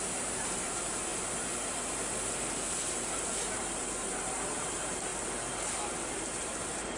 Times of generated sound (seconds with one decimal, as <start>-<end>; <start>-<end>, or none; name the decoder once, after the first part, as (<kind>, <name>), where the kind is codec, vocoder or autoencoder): 0.0-1.1 (vocoder, BigVGAN v2); 3.2-5.1; 6.1-7.0